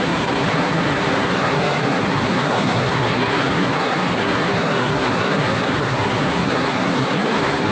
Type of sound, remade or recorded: remade